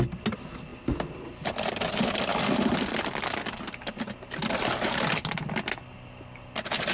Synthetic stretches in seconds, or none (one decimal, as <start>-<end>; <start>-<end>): 0.7-1.7